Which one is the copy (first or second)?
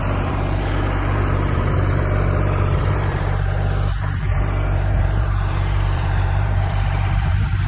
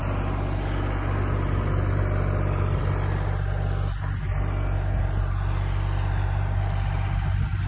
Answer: first